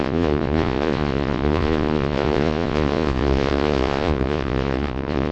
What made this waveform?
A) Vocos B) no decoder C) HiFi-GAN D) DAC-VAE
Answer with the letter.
A